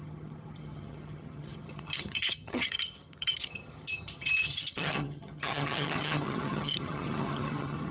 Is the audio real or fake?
fake